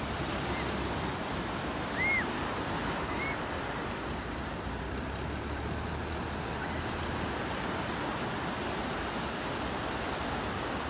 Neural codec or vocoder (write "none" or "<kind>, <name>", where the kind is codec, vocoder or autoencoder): none